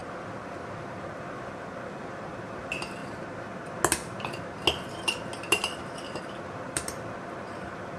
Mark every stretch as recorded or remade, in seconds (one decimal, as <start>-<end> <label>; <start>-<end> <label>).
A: 0.0-3.0 remade; 3.0-6.2 recorded; 6.2-8.0 remade